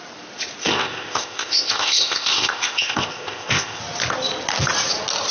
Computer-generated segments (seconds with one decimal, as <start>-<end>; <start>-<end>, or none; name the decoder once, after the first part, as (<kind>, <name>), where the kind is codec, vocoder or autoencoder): 0.6-3.8 (codec, ZipCodec)